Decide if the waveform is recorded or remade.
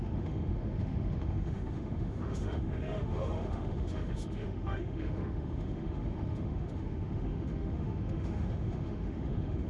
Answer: remade